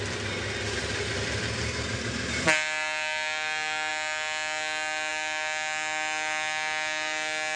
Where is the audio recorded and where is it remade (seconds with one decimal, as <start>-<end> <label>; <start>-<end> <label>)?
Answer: 0.0-7.6 recorded